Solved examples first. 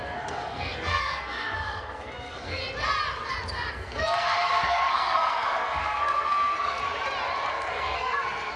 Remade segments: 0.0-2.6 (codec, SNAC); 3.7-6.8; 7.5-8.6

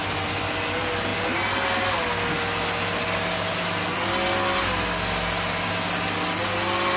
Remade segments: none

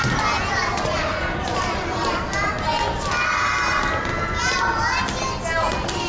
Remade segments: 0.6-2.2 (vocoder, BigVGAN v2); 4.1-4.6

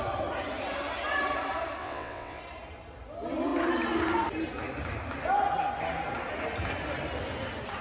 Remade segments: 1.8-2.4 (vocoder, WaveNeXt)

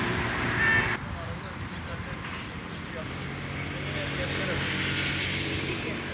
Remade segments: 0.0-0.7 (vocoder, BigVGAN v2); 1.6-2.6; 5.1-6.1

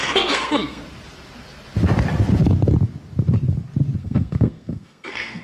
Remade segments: 0.0-0.8 (codec, SNAC); 4.0-5.4

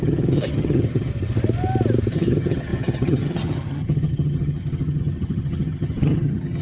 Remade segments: 0.0-1.1 (vocoder, HiFi-GAN); 2.1-6.6